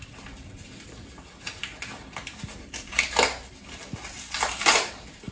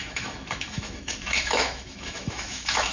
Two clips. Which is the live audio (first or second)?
first